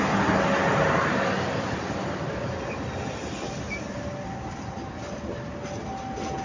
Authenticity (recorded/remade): recorded